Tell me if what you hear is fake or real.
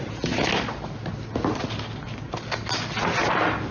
real